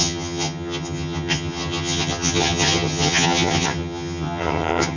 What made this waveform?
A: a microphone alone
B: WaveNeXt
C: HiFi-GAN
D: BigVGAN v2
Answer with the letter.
C